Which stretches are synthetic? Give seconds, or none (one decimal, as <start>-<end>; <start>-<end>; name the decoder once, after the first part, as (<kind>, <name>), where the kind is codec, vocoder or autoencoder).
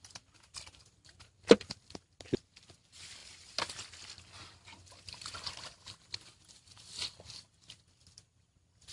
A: none